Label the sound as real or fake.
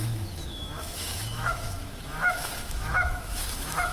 fake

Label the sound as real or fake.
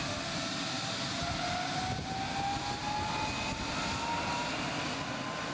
real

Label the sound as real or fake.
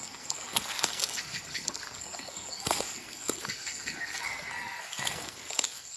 fake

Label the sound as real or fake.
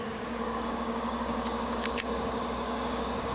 fake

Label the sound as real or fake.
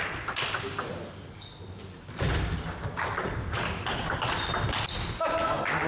real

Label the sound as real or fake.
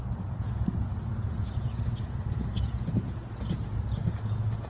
fake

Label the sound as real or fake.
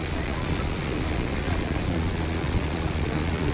fake